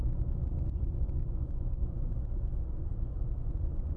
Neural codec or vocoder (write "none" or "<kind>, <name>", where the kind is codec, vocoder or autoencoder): vocoder, Vocos